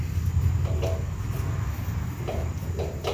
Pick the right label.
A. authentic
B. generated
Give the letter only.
A